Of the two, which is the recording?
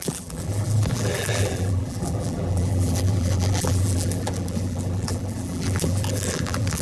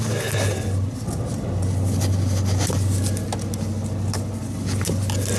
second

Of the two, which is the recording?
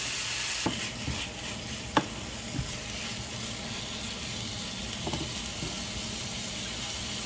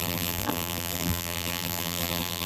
first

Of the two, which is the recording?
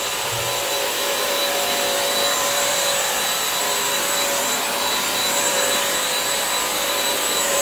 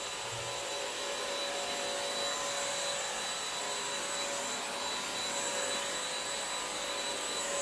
second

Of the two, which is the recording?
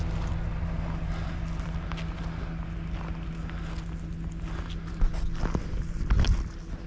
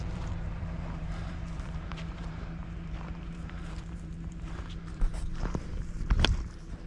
first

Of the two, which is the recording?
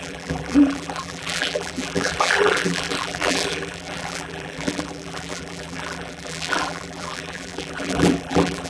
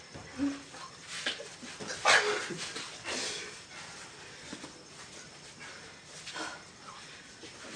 second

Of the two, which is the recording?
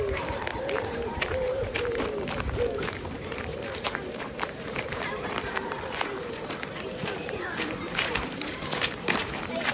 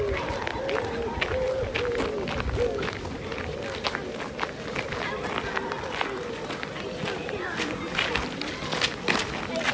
second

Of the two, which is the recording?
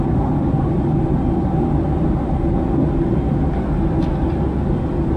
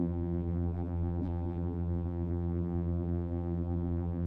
first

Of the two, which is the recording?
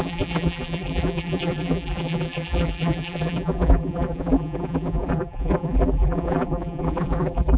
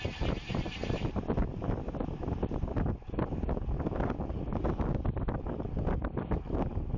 second